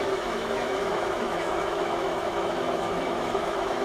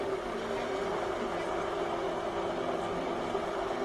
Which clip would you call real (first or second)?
second